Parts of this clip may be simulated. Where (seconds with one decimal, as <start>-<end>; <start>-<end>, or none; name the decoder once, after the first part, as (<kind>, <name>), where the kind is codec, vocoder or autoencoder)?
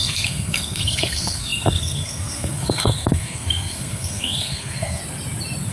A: 0.0-5.0 (codec, SNAC)